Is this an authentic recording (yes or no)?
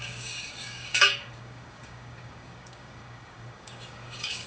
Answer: no